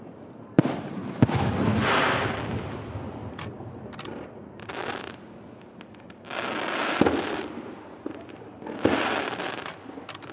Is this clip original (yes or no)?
yes